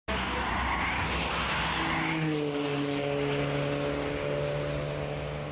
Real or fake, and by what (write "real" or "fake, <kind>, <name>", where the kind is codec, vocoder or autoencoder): real